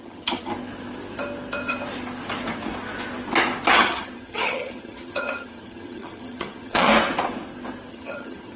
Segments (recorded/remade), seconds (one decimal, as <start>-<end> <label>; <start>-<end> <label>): 0.0-0.5 remade; 0.5-3.7 recorded; 3.7-6.9 remade; 6.9-7.9 recorded; 7.9-8.6 remade